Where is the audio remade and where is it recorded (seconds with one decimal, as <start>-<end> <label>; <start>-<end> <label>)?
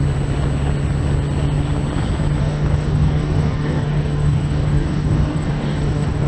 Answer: 0.0-2.4 recorded; 2.4-6.3 remade